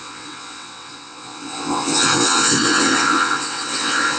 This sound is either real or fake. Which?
fake